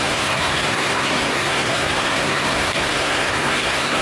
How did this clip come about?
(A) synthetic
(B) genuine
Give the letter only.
A